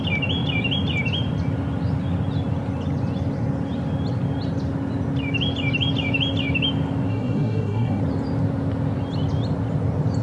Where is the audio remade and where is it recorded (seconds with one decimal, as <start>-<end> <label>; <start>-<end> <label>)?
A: 0.0-7.1 recorded; 7.1-8.0 remade; 8.0-10.2 recorded